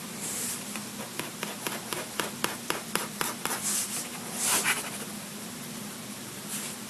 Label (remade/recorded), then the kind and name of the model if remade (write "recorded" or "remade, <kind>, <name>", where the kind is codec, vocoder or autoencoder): remade, vocoder, BigVGAN v2